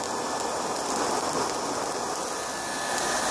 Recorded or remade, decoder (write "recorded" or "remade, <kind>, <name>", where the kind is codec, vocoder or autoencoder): recorded